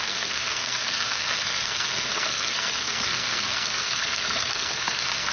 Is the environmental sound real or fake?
fake